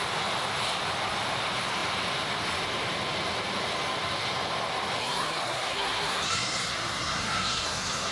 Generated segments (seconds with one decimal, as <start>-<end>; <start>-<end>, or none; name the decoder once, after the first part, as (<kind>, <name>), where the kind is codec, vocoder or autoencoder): 5.0-8.1 (codec, SNAC)